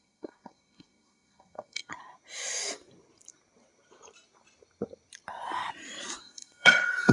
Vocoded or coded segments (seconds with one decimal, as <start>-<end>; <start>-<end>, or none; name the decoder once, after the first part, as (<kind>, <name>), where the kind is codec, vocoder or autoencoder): 0.0-1.9 (codec, SNAC); 6.2-7.1